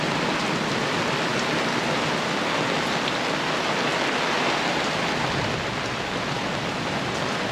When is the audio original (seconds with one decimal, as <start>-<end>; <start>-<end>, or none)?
0.0-7.5